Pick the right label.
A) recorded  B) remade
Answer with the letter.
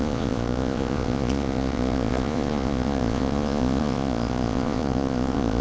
B